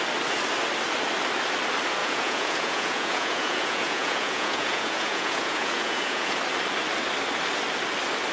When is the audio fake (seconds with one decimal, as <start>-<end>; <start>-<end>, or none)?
2.0-6.4